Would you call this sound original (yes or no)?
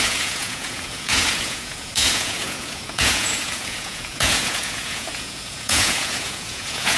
no